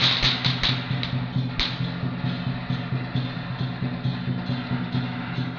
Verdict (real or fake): real